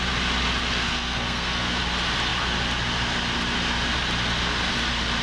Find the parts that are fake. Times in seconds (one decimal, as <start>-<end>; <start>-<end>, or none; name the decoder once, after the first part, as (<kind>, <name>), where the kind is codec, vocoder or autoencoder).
0.8-1.8 (codec, SNAC)